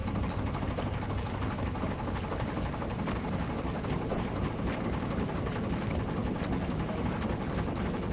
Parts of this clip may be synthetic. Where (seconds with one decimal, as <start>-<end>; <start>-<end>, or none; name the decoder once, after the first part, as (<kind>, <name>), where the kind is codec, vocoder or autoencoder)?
none